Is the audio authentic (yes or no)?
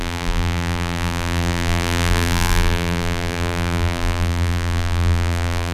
no